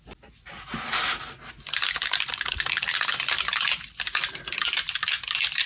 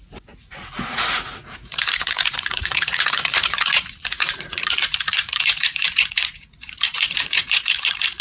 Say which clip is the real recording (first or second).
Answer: first